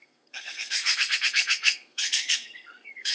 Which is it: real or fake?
fake